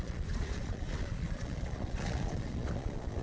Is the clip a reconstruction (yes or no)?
yes